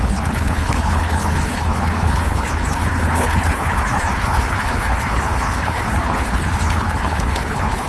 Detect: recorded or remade remade